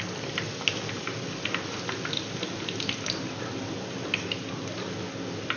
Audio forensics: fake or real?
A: real